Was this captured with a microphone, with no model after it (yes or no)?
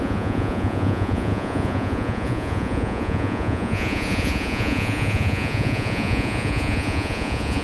no